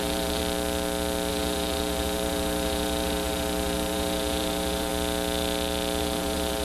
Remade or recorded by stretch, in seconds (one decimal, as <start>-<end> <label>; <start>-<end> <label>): 0.0-0.4 remade; 0.4-1.3 recorded; 1.3-4.9 remade; 4.9-6.0 recorded; 6.0-6.6 remade